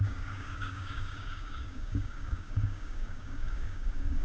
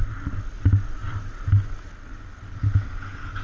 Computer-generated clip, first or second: first